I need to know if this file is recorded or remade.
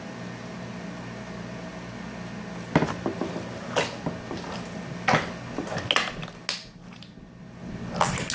recorded